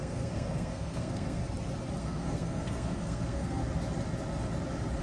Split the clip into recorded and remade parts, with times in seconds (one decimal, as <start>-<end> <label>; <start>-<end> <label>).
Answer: 0.0-1.4 remade; 1.4-2.0 recorded; 2.0-3.6 remade; 3.6-5.0 recorded